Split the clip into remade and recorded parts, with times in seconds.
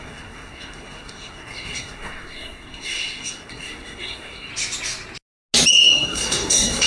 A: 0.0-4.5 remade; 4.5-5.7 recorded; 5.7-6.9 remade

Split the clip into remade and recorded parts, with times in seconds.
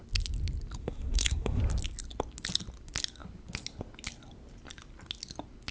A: 0.0-0.8 recorded; 0.8-1.6 remade; 1.6-5.7 recorded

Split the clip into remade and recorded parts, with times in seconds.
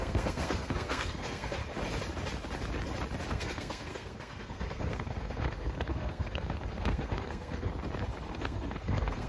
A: 0.0-1.6 remade; 1.6-3.3 recorded; 3.3-7.7 remade; 7.7-8.3 recorded; 8.3-9.3 remade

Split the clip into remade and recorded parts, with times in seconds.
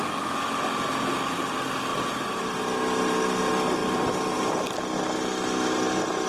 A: 0.0-6.3 recorded